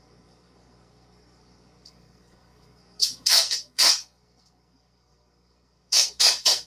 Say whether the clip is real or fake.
fake